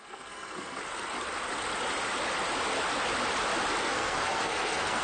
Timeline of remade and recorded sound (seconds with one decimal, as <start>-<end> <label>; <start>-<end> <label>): 0.0-0.8 remade; 0.8-3.8 recorded; 3.8-5.0 remade